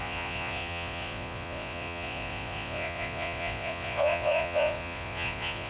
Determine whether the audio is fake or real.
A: fake